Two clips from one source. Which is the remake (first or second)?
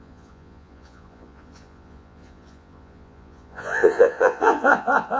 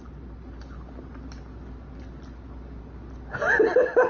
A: first